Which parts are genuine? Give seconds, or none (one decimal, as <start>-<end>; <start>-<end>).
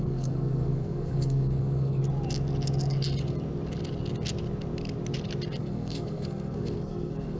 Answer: 2.0-5.6